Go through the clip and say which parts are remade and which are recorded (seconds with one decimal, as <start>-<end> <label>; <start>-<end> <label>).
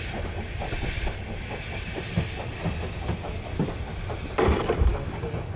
0.0-5.6 recorded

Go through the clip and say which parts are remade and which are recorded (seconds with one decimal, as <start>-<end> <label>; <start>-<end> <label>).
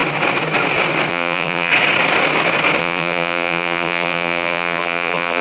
0.0-1.1 recorded; 1.1-1.7 remade; 1.7-2.8 recorded; 2.8-5.4 remade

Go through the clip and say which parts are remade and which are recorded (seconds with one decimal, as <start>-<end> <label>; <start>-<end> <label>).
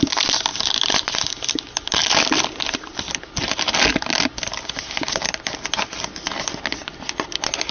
0.0-7.7 recorded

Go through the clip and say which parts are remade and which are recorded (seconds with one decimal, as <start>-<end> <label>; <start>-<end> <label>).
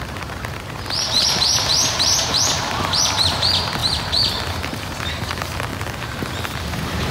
0.0-3.8 remade; 3.8-4.5 recorded; 4.5-5.7 remade; 5.7-6.6 recorded; 6.6-7.1 remade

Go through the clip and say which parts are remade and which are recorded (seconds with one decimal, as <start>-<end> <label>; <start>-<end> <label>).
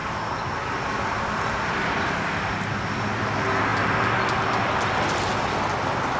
0.0-6.2 recorded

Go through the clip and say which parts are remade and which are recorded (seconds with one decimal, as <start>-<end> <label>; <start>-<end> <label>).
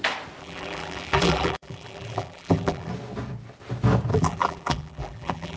0.0-0.4 recorded; 0.4-2.9 remade; 2.9-4.1 recorded; 4.1-5.6 remade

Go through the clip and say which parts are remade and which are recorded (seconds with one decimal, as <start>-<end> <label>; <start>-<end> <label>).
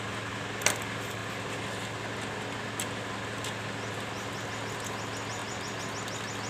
0.0-6.5 recorded